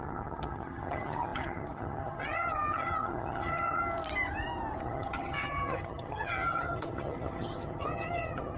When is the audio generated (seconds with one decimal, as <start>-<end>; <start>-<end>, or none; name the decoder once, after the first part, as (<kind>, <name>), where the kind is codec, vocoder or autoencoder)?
0.0-3.8 (vocoder, HiFi-GAN); 4.8-8.6